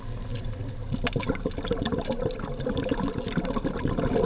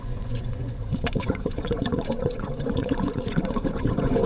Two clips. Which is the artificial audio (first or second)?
second